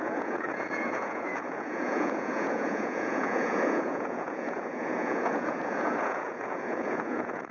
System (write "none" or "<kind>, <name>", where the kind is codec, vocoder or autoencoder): vocoder, Vocos